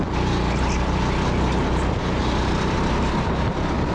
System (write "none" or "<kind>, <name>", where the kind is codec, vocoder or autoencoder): none